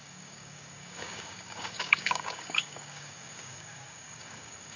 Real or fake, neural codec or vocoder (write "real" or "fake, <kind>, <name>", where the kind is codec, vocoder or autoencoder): fake, codec, DAC